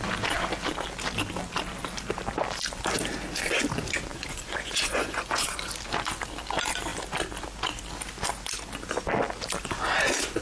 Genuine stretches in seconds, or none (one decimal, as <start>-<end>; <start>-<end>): 0.0-4.1; 5.7-10.4